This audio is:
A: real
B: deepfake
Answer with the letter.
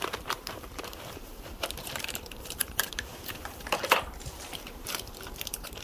B